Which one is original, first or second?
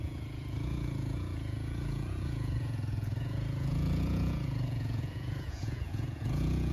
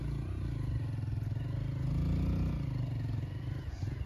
second